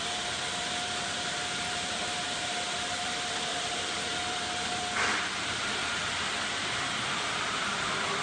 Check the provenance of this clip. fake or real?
fake